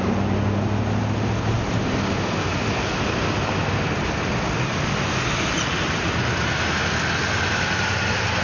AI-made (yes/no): no